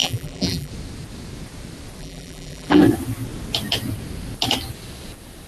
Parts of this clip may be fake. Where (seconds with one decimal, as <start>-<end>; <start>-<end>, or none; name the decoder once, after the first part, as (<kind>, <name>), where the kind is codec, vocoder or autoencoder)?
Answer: 0.0-0.7 (vocoder, BigVGAN v2); 2.0-2.8